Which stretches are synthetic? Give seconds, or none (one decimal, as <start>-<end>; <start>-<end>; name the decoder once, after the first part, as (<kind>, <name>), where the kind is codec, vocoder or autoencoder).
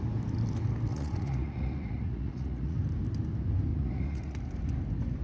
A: 0.9-2.8 (vocoder, Vocos); 3.7-4.4